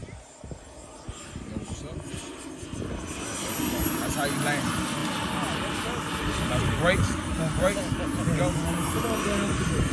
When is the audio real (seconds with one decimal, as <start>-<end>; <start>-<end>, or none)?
0.0-9.9